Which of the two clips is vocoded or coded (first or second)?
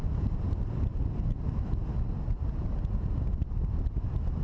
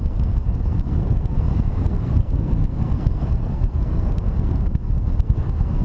second